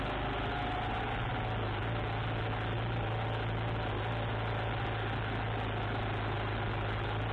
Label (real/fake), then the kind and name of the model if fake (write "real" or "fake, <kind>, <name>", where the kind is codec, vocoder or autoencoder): real